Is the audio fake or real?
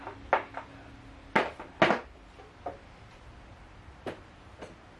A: real